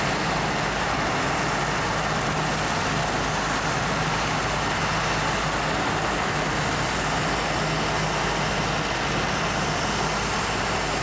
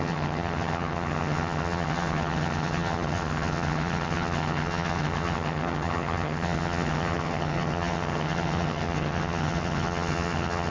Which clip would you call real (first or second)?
first